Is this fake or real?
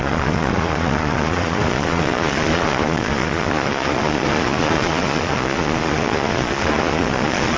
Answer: fake